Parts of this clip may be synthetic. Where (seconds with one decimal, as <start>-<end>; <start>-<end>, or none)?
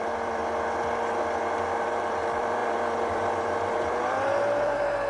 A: 0.0-0.4; 1.6-5.1